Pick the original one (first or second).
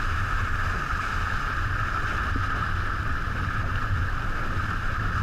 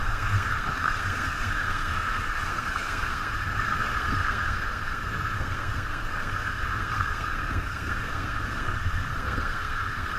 first